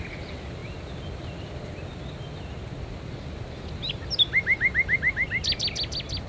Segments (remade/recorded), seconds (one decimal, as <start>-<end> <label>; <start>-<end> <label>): 0.0-6.3 recorded